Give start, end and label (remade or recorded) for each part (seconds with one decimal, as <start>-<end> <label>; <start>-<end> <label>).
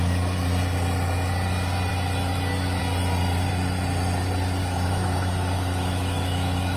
0.0-4.6 recorded; 4.6-6.8 remade